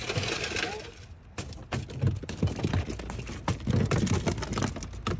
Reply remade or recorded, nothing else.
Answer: recorded